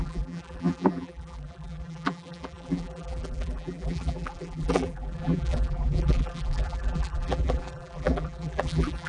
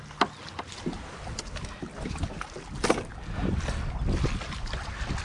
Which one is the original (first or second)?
second